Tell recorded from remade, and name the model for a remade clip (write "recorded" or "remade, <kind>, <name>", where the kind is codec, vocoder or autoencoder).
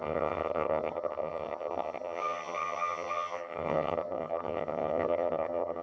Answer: remade, vocoder, HiFi-GAN